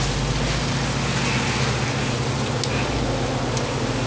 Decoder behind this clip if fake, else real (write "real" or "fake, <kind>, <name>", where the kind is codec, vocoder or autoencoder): real